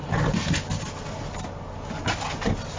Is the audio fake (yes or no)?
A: no